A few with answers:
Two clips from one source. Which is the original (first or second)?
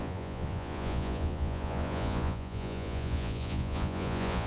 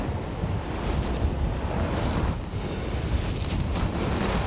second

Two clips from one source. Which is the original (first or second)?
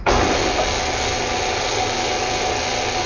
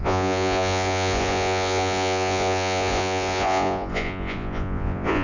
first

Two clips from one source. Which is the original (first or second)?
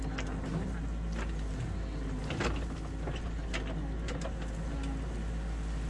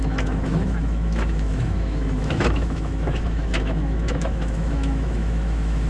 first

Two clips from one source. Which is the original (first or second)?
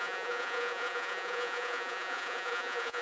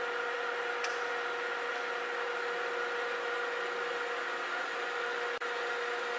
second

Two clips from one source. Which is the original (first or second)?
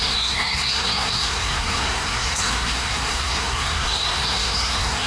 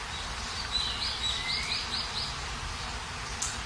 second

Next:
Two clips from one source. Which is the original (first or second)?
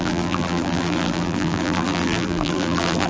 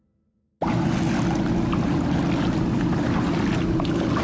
second